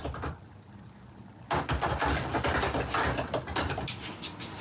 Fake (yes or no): no